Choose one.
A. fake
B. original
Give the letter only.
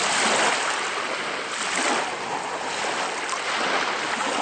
B